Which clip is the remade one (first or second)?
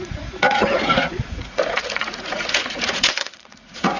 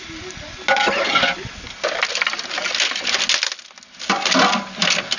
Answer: first